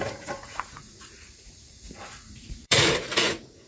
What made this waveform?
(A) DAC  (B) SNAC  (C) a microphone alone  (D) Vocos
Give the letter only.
D